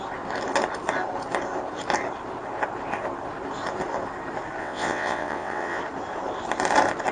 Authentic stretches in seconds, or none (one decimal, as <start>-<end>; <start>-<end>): 0.0-4.6; 5.8-7.1